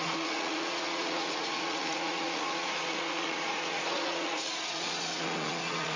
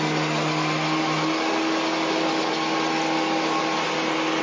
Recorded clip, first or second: second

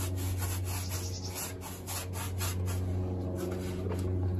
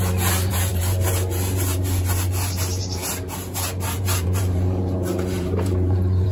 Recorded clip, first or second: first